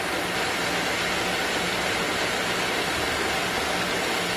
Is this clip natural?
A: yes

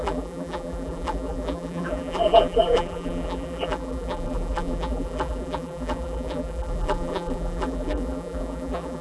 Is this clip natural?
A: no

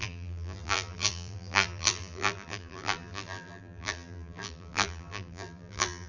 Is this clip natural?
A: no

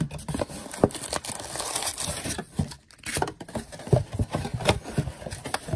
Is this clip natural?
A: yes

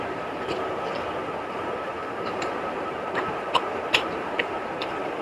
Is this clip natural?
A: no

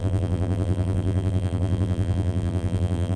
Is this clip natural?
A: no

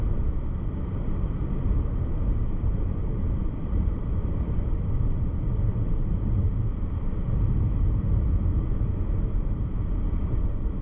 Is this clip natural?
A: no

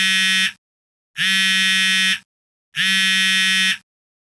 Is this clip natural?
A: yes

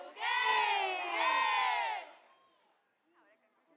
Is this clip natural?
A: yes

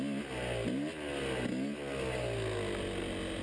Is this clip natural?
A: yes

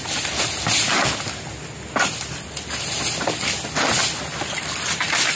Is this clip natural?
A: yes